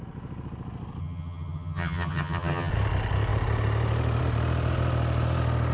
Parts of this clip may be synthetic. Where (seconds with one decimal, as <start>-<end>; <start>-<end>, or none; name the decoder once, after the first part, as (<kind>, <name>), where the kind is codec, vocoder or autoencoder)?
1.0-2.7 (vocoder, HiFi-GAN)